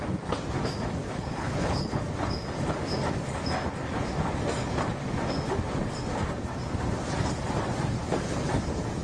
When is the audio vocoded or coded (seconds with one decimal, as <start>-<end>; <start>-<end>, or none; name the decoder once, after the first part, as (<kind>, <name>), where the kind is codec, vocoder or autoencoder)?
1.0-2.0 (codec, HILCodec)

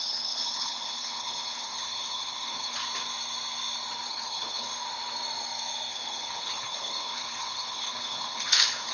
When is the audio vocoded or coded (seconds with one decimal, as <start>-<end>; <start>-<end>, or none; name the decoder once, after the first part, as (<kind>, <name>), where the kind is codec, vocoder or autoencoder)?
0.0-2.8 (codec, HILCodec); 4.1-4.7; 5.9-8.9

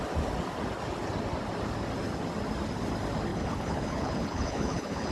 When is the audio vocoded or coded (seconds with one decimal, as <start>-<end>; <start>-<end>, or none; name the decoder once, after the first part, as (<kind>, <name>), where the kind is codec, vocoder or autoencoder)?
3.3-5.1 (codec, HILCodec)

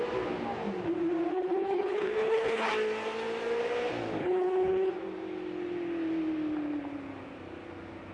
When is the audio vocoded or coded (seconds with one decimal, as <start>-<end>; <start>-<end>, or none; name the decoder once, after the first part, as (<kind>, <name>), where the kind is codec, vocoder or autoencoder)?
1.3-2.7 (codec, HILCodec); 4.2-4.9

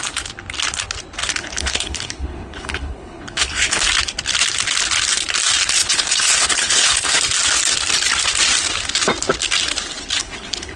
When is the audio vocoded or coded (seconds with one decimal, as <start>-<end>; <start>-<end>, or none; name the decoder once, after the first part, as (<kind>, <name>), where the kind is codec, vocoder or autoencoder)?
1.4-3.8 (codec, HILCodec); 5.8-7.2; 10.2-10.8

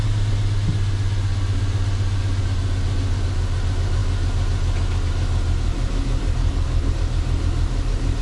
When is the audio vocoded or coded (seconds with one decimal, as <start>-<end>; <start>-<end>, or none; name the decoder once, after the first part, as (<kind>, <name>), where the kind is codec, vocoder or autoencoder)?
6.4-6.9 (codec, HILCodec)

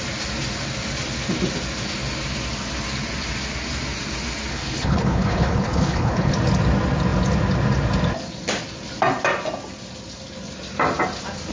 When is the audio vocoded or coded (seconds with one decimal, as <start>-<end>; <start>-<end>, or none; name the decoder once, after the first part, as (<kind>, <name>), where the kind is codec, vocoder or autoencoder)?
4.5-6.3 (codec, HILCodec)

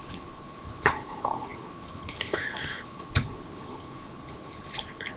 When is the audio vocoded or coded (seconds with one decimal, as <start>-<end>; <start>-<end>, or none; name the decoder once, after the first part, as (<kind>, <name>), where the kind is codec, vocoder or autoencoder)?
0.0-5.2 (codec, HILCodec)